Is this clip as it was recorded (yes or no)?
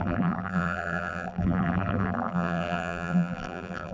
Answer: no